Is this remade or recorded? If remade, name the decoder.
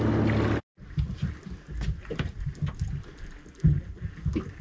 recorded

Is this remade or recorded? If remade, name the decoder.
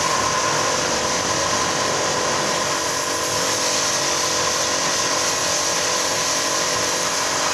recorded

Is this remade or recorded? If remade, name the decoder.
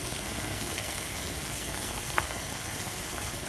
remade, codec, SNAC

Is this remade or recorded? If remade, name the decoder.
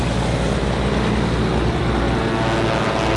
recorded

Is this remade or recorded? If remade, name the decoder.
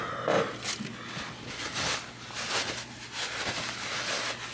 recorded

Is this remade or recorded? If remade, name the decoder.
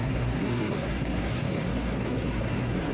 remade, codec, SNAC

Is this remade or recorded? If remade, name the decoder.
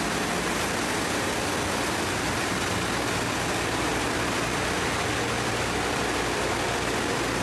recorded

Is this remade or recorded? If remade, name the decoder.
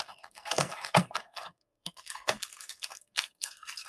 remade, codec, SNAC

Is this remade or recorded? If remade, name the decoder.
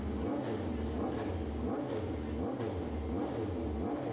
recorded